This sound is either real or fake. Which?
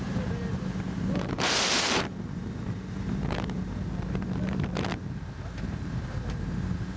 fake